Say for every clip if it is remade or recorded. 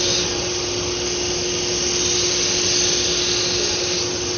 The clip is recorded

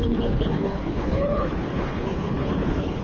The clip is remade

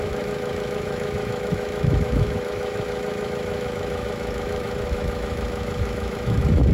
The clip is remade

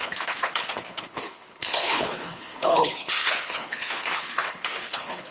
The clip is remade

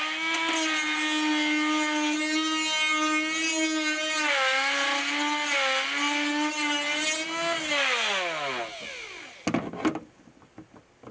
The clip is recorded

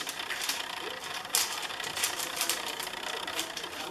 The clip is remade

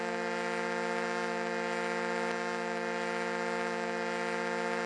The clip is recorded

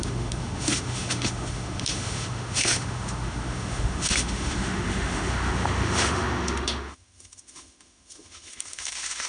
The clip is remade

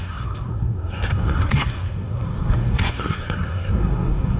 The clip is remade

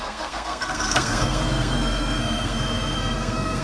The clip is remade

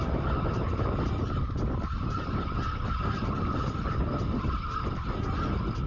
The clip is recorded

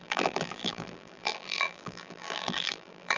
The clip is remade